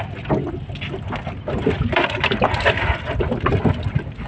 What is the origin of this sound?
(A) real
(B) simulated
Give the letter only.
A